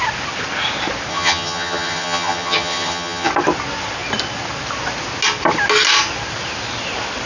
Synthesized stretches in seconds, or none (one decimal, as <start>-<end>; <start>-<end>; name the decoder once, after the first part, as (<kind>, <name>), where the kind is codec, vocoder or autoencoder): 1.1-3.3 (vocoder, HiFi-GAN)